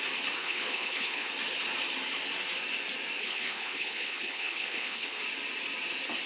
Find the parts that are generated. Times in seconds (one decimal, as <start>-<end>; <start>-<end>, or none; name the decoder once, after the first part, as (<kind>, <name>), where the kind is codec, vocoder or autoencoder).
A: 0.4-1.3 (codec, HILCodec); 3.2-5.2